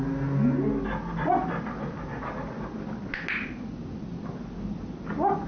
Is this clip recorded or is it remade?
recorded